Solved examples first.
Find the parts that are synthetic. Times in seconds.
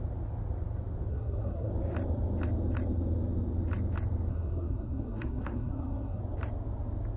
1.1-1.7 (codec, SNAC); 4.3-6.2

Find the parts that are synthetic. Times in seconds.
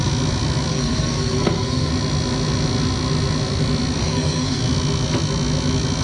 0.7-1.9 (codec, SNAC); 4.0-4.6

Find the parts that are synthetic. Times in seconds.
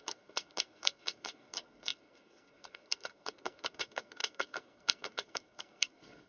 0.0-6.3 (codec, SNAC)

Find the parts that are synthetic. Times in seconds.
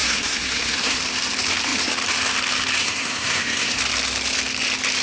0.0-1.0 (codec, SNAC); 2.8-3.8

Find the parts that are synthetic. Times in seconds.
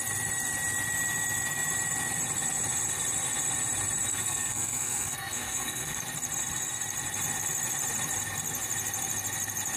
4.1-6.0 (codec, SNAC)